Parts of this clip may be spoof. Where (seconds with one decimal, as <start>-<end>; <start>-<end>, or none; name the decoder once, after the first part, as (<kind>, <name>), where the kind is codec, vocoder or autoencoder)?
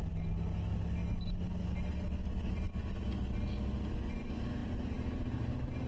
4.6-5.9 (vocoder, BigVGAN v2)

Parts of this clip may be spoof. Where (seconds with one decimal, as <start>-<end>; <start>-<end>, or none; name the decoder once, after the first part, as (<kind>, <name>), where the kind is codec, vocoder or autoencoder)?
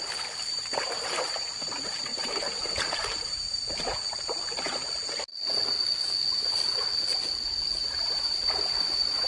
2.1-3.7 (vocoder, BigVGAN v2); 7.8-9.3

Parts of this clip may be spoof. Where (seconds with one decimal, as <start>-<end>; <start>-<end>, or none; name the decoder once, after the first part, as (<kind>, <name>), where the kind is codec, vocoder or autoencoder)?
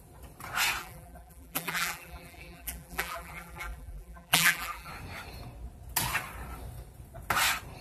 0.8-4.9 (vocoder, BigVGAN v2)